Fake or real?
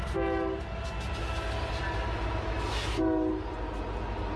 real